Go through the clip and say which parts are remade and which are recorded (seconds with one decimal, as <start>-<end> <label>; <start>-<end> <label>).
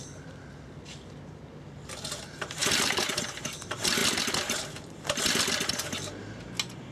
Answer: 0.0-6.9 recorded